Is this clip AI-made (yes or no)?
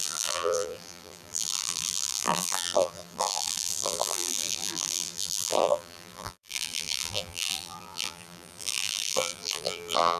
yes